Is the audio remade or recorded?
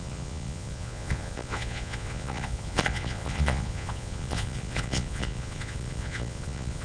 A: remade